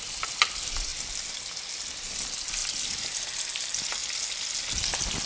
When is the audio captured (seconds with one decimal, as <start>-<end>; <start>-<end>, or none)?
0.0-5.3